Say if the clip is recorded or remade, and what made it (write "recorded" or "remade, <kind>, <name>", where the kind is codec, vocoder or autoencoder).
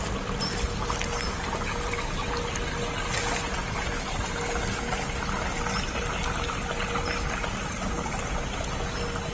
recorded